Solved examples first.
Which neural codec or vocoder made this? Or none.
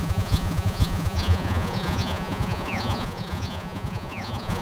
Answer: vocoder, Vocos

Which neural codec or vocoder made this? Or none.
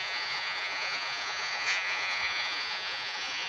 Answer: vocoder, Vocos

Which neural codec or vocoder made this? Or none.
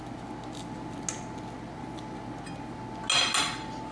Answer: none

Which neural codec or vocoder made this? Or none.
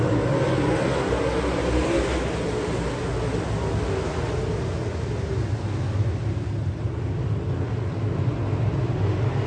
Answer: none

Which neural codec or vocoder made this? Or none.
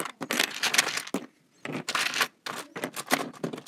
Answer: none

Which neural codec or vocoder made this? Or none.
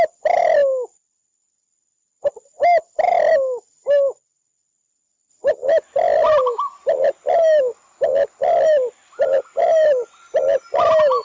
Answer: none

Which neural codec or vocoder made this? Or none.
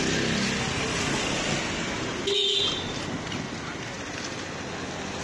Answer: none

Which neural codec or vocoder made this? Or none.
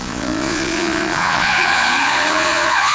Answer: vocoder, Vocos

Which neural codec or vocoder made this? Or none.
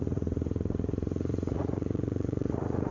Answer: vocoder, Vocos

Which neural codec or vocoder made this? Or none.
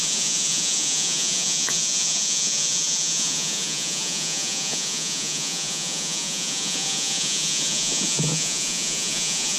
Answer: vocoder, Vocos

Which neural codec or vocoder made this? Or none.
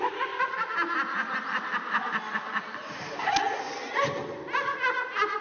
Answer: none